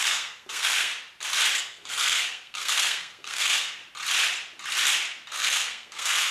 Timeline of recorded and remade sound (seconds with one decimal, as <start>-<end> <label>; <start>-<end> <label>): 0.0-0.9 remade; 0.9-1.6 recorded; 1.6-3.8 remade; 3.8-5.3 recorded; 5.3-6.3 remade